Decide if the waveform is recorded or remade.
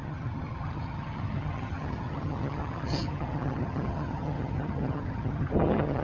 remade